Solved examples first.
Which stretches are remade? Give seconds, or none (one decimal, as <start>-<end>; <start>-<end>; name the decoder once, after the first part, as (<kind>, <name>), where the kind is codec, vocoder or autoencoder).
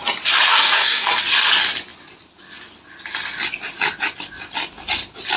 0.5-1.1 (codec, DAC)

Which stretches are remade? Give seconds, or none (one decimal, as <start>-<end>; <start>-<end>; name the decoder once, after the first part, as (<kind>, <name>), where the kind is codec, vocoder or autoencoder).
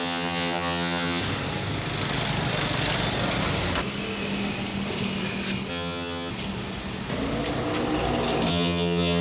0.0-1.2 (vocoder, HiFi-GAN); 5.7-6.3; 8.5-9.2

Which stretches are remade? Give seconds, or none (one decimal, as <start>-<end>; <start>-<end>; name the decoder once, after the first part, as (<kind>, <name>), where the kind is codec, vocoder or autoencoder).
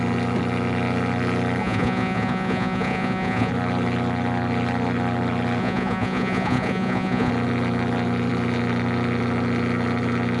1.6-3.5 (vocoder, Vocos); 5.6-7.3